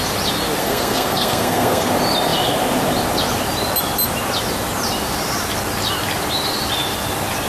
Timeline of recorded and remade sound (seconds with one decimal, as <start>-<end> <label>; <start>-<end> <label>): 0.0-0.6 recorded; 0.6-1.9 remade; 1.9-7.5 recorded